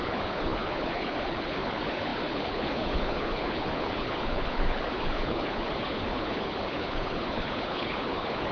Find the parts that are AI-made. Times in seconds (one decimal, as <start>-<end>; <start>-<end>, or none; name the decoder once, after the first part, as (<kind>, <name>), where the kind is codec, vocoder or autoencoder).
0.0-8.5 (codec, HILCodec)